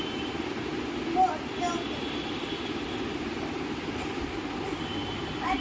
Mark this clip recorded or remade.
recorded